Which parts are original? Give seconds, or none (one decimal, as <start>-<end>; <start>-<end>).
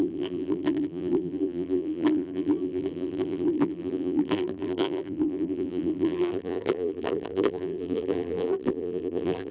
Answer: none